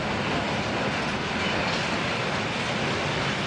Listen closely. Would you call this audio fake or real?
real